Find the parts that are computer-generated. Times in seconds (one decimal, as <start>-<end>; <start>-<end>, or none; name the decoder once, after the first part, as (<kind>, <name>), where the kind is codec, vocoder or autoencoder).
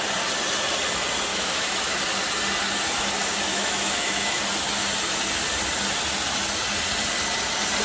1.3-2.0 (autoencoder, DAC-VAE); 3.5-4.4